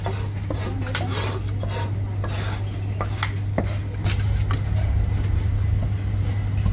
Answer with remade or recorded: recorded